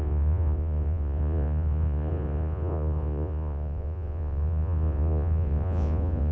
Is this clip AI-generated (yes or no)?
yes